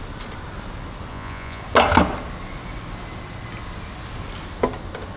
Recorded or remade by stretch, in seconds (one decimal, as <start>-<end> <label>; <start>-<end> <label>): 0.0-1.1 recorded; 1.1-1.6 remade; 1.6-5.2 recorded